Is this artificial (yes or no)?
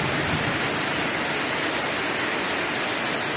no